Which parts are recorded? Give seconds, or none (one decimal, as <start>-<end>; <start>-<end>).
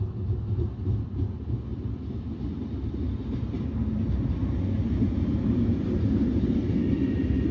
1.7-6.2